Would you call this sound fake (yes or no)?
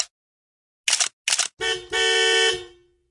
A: no